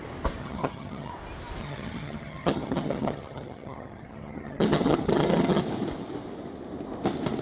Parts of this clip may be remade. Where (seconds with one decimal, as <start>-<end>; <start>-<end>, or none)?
0.4-1.1; 1.6-5.6